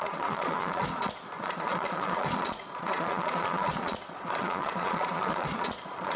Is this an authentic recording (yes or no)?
no